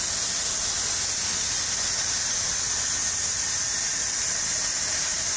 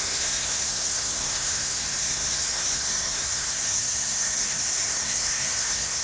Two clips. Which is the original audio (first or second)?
first